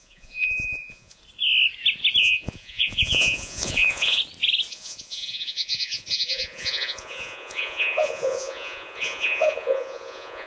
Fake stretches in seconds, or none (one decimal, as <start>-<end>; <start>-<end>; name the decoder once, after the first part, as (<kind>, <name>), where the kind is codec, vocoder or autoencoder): 0.0-1.2 (vocoder, Vocos); 2.2-4.2; 4.7-10.5